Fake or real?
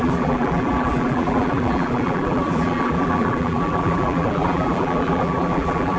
fake